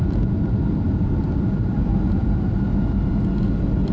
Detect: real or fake real